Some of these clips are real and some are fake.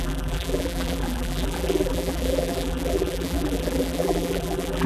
fake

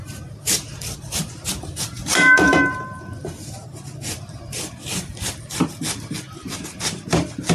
fake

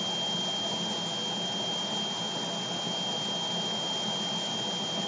real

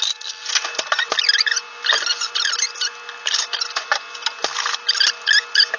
real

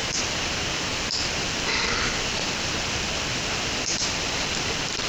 fake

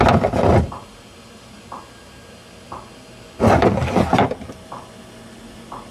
real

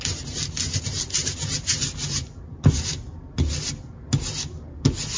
real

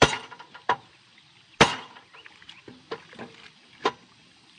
fake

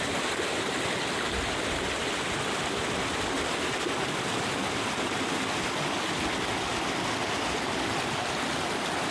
real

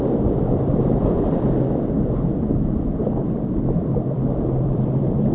fake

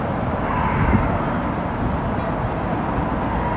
real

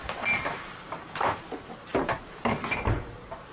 fake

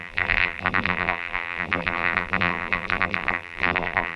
fake